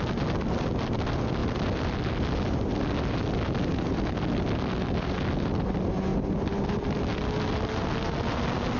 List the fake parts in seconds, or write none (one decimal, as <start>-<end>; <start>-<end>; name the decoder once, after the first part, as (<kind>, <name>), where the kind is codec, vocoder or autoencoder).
none